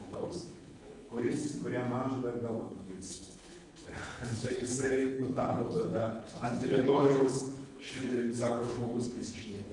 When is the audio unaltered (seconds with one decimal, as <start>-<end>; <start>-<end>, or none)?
1.5-2.5